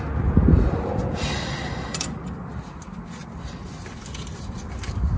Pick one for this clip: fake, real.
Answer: real